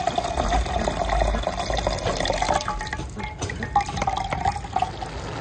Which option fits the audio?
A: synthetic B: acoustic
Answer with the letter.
B